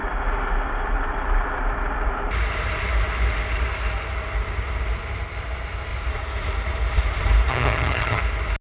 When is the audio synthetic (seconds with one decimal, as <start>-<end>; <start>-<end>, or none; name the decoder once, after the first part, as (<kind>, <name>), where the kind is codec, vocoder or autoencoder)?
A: 7.5-8.2 (vocoder, HiFi-GAN)